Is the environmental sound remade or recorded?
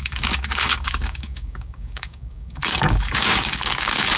remade